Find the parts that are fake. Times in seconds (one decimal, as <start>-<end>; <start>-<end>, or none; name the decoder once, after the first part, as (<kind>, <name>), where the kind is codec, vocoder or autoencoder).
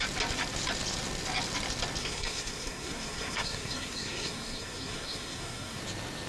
2.0-5.8 (codec, SNAC)